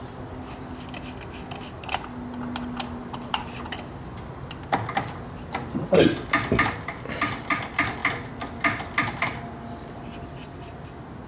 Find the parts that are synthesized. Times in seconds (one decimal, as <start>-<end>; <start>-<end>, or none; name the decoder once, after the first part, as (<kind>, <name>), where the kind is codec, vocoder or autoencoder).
none